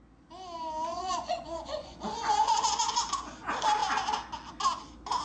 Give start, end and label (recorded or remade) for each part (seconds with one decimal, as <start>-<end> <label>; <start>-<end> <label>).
0.0-0.9 recorded; 0.9-3.0 remade; 3.0-5.2 recorded